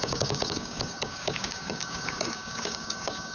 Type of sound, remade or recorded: remade